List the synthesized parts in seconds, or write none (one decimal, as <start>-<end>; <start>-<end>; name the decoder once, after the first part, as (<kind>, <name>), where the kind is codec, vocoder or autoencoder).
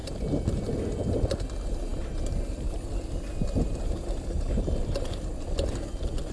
none